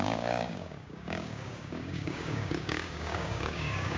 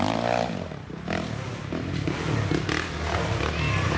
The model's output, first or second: first